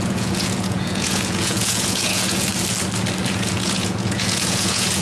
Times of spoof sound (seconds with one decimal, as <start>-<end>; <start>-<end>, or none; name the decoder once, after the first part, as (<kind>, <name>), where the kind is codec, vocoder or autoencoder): 0.0-2.5 (vocoder, Vocos); 3.3-5.0